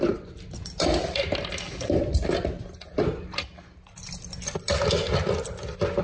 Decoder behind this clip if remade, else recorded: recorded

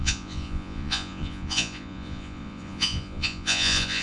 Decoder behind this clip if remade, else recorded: remade, vocoder, Vocos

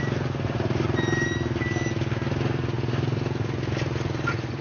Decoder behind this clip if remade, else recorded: recorded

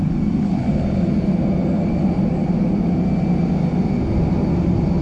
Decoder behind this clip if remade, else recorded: recorded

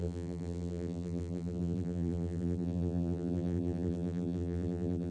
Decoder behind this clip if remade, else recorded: remade, vocoder, BigVGAN v2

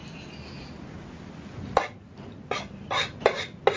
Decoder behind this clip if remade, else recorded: recorded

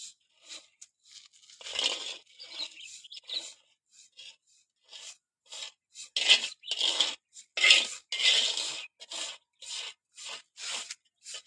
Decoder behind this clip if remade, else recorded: recorded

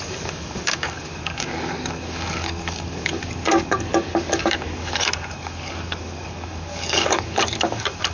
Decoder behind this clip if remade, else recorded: remade, codec, DAC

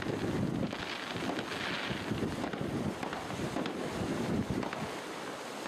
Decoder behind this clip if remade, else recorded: recorded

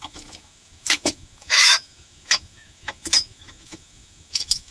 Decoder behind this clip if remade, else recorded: remade, autoencoder, DAC-VAE